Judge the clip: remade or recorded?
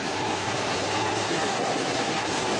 remade